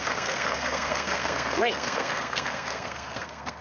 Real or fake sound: fake